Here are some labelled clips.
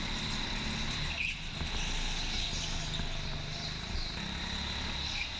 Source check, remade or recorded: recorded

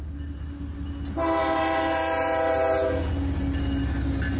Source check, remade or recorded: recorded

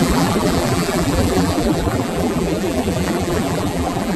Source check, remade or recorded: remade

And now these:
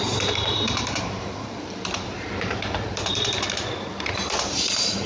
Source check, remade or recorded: remade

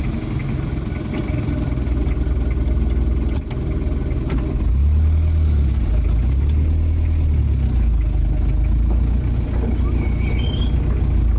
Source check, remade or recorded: recorded